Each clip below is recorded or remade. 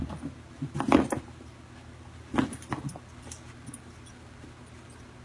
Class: recorded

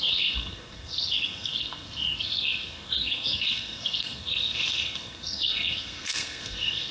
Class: remade